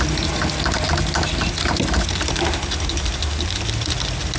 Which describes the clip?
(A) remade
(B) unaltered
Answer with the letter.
B